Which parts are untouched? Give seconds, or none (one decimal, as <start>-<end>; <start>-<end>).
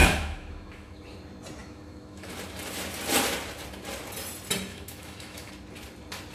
1.0-1.6; 2.3-4.7; 5.5-6.3